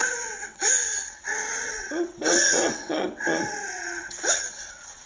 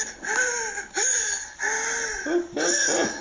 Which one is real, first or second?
second